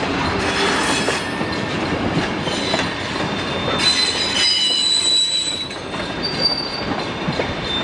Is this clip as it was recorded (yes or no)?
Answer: no